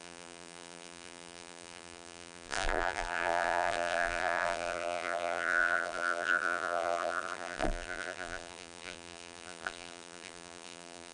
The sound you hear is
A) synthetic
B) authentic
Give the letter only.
A